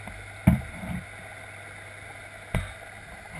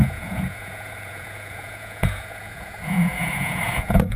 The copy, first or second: second